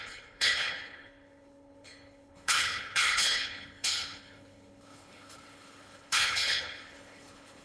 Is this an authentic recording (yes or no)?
no